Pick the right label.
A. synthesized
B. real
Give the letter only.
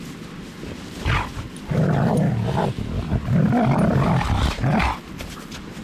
B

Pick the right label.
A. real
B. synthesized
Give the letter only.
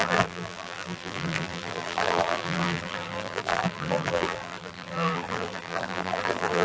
B